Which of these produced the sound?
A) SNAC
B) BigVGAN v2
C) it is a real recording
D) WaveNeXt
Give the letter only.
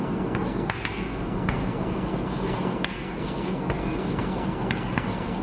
A